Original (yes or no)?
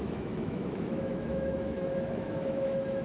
no